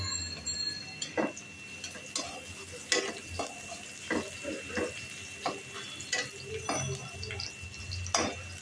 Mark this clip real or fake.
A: real